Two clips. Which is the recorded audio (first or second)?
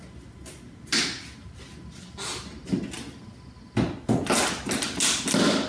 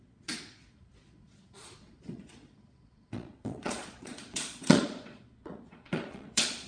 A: first